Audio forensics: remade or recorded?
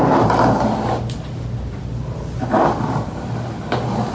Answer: recorded